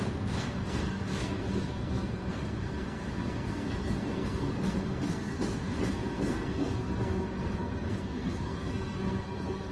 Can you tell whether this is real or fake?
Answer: fake